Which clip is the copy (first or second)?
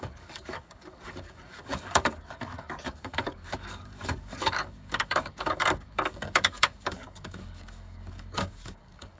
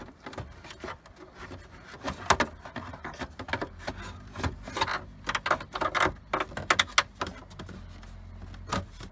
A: first